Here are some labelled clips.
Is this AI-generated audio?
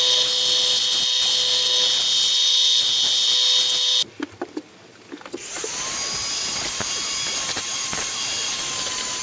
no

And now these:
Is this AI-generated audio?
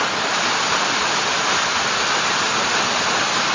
no